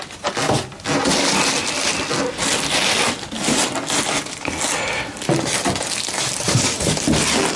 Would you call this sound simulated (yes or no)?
no